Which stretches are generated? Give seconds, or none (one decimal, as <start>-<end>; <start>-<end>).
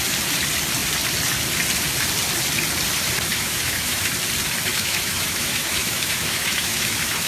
3.3-4.0; 4.7-7.3